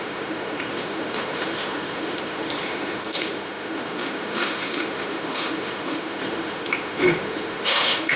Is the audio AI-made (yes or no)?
yes